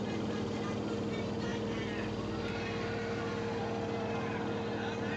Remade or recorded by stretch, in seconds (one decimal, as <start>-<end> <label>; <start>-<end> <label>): 0.0-5.2 recorded